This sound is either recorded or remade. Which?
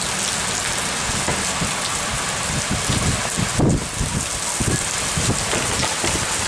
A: recorded